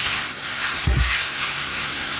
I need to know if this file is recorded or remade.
remade